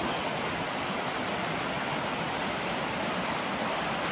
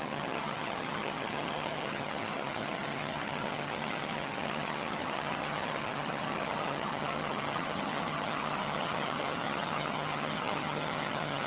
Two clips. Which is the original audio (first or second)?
first